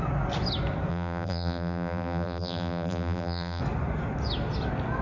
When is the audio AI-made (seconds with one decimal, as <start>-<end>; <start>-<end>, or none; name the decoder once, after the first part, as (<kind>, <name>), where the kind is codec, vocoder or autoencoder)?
0.9-3.6 (vocoder, BigVGAN v2)